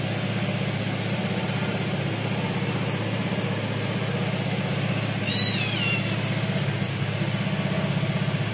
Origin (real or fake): real